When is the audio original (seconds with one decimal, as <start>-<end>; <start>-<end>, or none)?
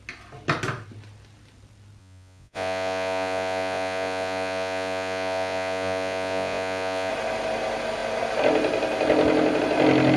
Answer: 0.0-2.0; 7.1-10.2